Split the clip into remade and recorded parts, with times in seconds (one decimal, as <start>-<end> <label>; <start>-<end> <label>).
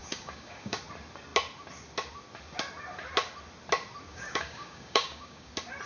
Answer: 0.0-0.8 remade; 0.8-4.1 recorded; 4.1-5.5 remade; 5.5-5.9 recorded